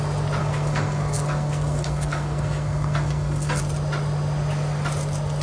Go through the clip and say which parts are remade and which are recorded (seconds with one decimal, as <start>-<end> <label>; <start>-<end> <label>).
0.0-0.4 recorded; 0.4-3.6 remade; 3.6-5.4 recorded